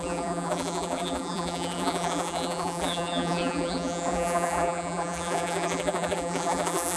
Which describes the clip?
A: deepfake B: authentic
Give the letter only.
A